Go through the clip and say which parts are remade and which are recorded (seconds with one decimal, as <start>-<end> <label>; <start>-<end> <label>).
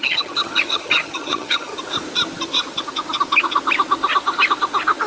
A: 0.0-1.7 remade; 1.7-5.1 recorded